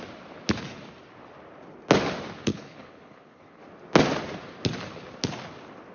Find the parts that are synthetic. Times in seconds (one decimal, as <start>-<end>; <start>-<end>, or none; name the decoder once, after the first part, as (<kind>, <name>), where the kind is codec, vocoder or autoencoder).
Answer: 2.5-3.6 (codec, HILCodec)